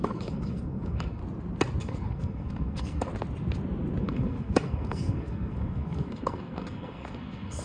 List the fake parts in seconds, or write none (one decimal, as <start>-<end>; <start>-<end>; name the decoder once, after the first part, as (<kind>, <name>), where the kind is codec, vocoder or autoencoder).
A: 0.0-1.2 (codec, SNAC); 1.8-3.1; 4.0-7.6